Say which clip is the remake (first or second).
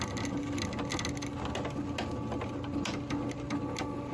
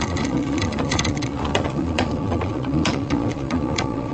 second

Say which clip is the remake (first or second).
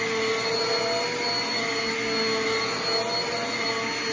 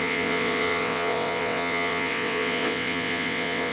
second